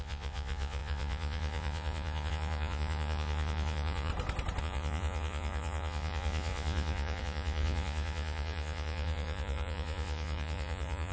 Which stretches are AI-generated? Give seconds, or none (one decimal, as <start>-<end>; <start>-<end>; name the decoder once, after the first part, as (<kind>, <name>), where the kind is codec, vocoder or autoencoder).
0.0-4.1 (vocoder, Vocos); 4.6-11.1